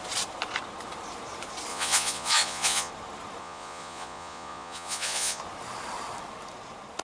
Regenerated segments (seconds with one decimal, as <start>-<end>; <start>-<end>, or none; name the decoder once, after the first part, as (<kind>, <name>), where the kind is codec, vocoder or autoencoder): 1.7-2.9 (vocoder, Vocos); 3.4-5.4